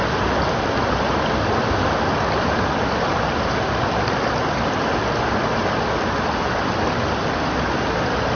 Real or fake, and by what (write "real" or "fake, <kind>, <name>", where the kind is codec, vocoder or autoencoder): real